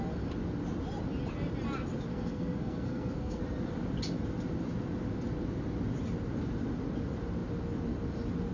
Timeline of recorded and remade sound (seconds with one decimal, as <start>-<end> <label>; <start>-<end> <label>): 0.0-2.1 recorded; 2.1-3.4 remade; 3.4-8.5 recorded